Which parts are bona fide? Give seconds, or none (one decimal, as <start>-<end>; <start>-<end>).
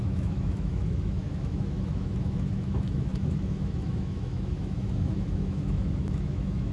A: none